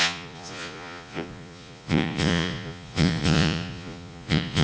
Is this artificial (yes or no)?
yes